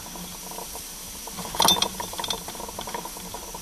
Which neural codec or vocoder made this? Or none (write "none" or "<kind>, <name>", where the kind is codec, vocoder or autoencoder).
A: none